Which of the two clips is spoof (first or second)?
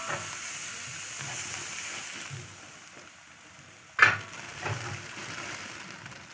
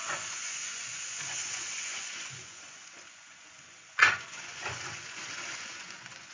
second